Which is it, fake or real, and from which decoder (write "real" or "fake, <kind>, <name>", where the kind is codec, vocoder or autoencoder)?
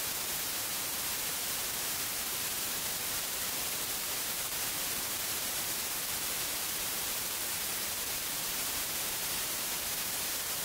fake, vocoder, BigVGAN v2